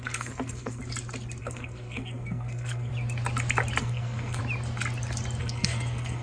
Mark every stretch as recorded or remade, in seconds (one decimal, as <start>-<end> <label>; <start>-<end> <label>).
0.0-0.8 remade; 0.8-1.4 recorded; 1.4-2.9 remade; 2.9-3.8 recorded; 3.8-4.4 remade; 4.4-5.4 recorded; 5.4-6.2 remade

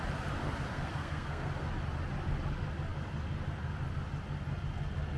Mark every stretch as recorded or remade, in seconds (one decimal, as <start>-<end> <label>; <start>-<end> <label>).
0.0-0.7 recorded; 0.7-1.7 remade; 1.7-5.2 recorded

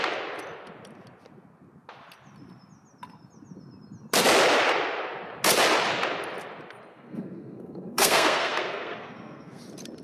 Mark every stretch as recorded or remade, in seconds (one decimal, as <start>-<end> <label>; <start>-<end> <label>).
0.0-6.9 recorded; 6.9-9.6 remade; 9.6-10.0 recorded

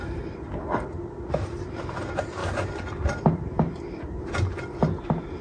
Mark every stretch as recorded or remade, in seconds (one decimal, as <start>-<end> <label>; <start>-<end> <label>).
0.0-5.4 recorded

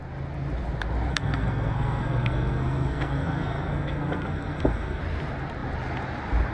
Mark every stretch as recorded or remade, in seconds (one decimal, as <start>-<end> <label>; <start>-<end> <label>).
0.0-1.1 recorded; 1.1-5.0 remade; 5.0-6.5 recorded

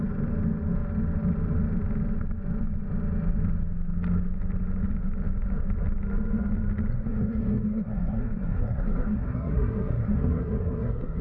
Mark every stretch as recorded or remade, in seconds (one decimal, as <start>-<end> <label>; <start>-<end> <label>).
0.0-6.9 recorded; 6.9-11.2 remade

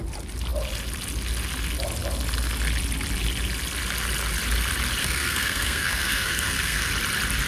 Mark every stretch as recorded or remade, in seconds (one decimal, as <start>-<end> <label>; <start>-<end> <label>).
0.0-5.0 recorded; 5.0-6.9 remade; 6.9-7.5 recorded

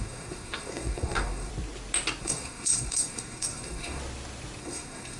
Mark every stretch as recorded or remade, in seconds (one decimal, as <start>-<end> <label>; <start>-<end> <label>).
0.0-1.5 remade; 1.5-2.2 recorded; 2.2-4.0 remade; 4.0-4.6 recorded; 4.6-5.2 remade